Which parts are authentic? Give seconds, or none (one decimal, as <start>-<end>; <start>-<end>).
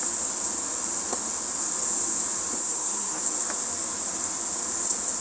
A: 0.0-2.6; 3.2-5.2